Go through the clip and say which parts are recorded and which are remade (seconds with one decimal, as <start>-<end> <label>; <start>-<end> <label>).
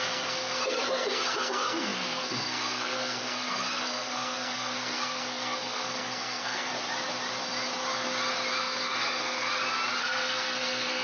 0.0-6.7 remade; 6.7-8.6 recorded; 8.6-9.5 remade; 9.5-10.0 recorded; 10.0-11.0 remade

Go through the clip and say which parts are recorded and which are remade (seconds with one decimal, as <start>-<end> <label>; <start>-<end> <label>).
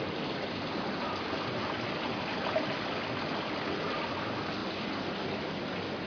0.0-6.1 recorded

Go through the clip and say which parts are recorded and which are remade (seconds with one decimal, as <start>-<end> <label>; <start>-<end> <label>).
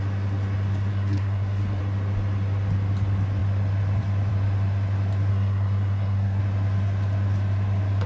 0.0-0.9 recorded; 0.9-1.8 remade; 1.8-5.3 recorded; 5.3-6.4 remade; 6.4-8.1 recorded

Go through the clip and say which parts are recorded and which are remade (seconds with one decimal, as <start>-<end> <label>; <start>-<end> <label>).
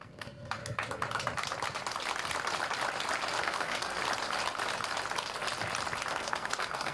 0.0-0.6 remade; 0.6-3.4 recorded; 3.4-4.0 remade; 4.0-6.1 recorded; 6.1-6.9 remade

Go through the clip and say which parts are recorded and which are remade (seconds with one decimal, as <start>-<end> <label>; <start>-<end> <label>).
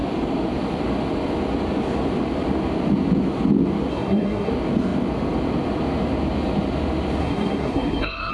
0.0-3.9 recorded; 3.9-4.5 remade; 4.5-7.2 recorded; 7.2-8.3 remade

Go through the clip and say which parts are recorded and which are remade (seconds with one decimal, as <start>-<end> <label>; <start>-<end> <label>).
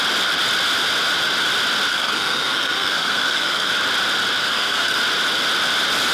0.0-1.9 recorded; 1.9-3.7 remade; 3.7-4.4 recorded; 4.4-5.0 remade; 5.0-6.1 recorded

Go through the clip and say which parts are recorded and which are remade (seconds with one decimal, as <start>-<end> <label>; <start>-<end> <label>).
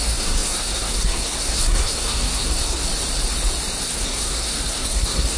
0.0-2.9 remade; 2.9-3.8 recorded; 3.8-5.4 remade